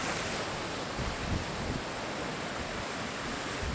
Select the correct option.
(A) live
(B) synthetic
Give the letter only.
B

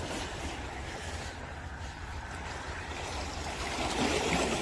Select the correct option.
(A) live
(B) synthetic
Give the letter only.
B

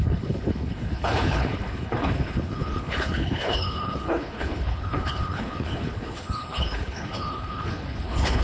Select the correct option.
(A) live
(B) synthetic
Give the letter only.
B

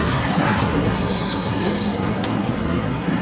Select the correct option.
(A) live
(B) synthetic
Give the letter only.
B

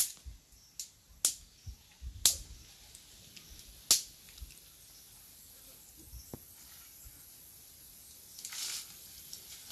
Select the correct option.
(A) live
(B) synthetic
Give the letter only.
A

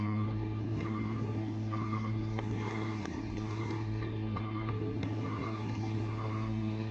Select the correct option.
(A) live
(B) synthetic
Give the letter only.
B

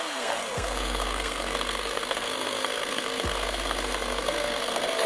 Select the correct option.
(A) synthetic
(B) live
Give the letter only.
A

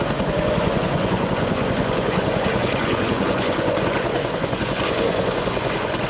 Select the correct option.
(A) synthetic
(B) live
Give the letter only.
A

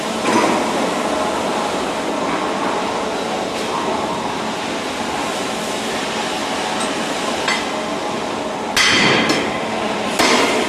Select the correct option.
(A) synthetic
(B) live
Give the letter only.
B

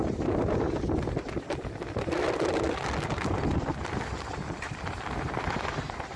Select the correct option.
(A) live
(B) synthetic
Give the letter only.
A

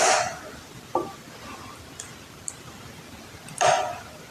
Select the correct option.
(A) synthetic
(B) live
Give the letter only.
B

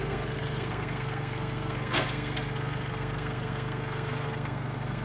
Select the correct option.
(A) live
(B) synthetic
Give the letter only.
B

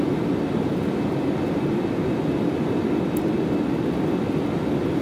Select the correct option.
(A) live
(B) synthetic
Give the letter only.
A